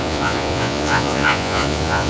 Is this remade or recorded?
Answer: remade